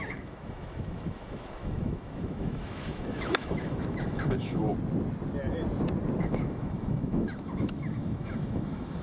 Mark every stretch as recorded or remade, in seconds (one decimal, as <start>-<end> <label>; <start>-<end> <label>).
0.0-4.6 remade; 4.6-6.2 recorded; 6.2-9.0 remade